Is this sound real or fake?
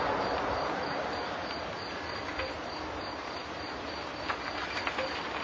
real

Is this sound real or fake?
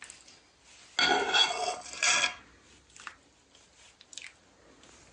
real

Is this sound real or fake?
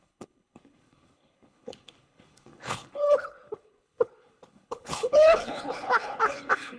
fake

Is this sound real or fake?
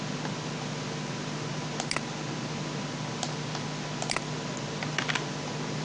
real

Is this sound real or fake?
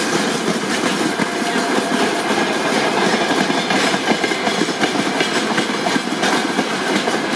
real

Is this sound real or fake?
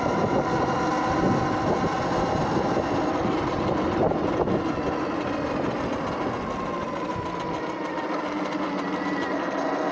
real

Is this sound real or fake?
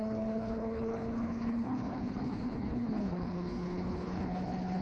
fake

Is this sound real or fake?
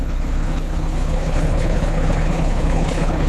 fake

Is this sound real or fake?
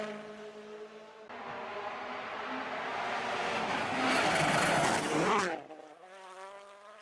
real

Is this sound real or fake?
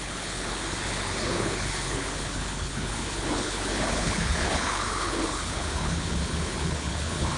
fake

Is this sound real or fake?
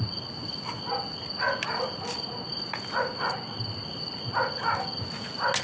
real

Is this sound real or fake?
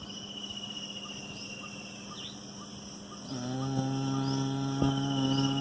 real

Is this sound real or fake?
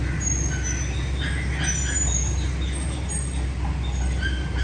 real